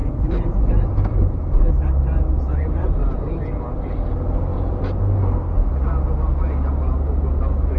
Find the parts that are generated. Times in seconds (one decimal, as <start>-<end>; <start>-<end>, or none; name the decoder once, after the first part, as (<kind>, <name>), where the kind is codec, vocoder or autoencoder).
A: 0.0-3.5 (vocoder, BigVGAN v2); 4.5-5.0

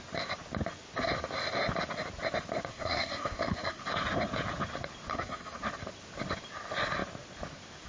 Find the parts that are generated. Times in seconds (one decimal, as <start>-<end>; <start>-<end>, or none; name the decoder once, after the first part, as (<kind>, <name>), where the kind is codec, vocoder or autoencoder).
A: 2.7-3.8 (codec, SNAC); 5.1-5.6

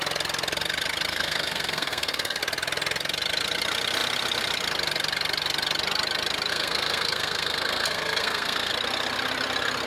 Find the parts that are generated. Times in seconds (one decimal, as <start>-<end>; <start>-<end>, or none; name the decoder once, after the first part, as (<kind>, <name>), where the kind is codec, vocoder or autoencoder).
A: 1.1-2.4 (codec, SNAC); 6.5-8.7